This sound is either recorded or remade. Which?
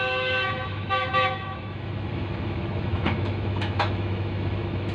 remade